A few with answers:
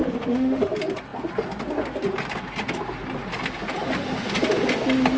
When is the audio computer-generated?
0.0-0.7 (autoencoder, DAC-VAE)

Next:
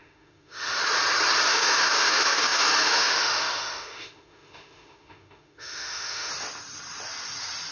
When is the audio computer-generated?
0.0-0.8 (autoencoder, DAC-VAE); 1.5-6.3

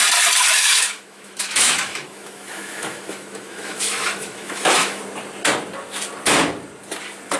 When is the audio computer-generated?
0.6-5.0 (autoencoder, DAC-VAE)

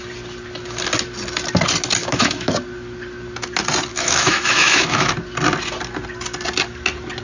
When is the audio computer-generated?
2.0-2.5 (autoencoder, DAC-VAE); 3.9-5.1

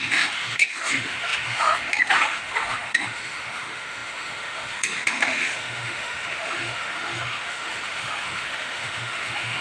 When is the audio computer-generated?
0.0-9.6 (autoencoder, DAC-VAE)

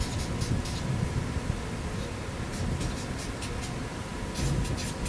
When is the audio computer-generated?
none

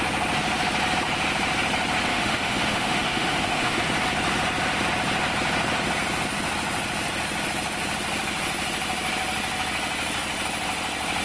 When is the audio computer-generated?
2.1-3.8 (autoencoder, DAC-VAE)

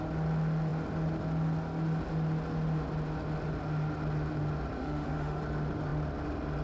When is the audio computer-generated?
4.8-5.4 (autoencoder, DAC-VAE)